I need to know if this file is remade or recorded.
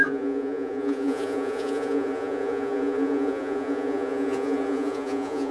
remade